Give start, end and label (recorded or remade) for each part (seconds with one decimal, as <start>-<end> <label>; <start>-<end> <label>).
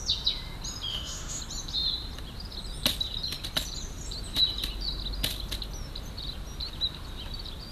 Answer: 0.0-0.9 recorded; 0.9-1.4 remade; 1.4-7.7 recorded